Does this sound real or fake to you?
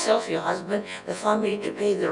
fake